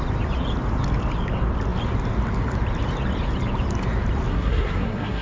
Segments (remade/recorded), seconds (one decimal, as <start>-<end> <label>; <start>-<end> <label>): 0.0-4.3 recorded; 4.3-5.2 remade